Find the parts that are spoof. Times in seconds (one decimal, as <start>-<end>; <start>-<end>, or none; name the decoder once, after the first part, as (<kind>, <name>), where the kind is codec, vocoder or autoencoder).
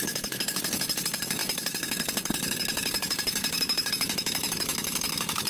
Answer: 0.0-5.5 (autoencoder, DAC-VAE)